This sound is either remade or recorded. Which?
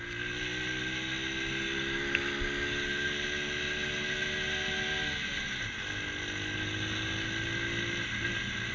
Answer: recorded